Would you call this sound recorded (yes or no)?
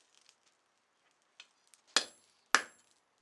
yes